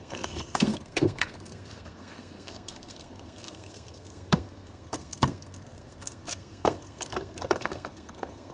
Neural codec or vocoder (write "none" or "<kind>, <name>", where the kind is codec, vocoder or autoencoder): codec, SNAC